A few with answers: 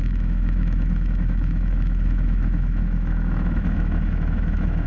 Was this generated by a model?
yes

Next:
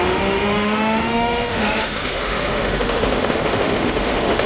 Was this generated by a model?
yes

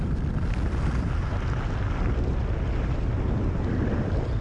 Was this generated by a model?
no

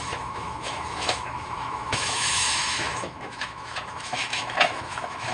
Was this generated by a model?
yes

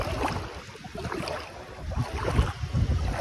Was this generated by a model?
no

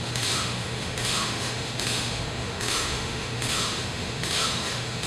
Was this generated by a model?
yes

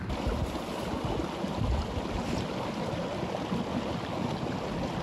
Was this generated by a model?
no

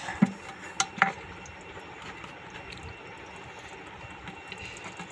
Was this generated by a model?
no